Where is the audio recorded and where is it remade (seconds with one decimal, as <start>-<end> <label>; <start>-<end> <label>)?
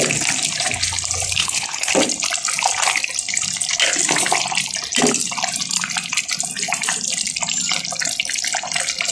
0.0-1.4 recorded; 1.4-1.9 remade; 1.9-9.1 recorded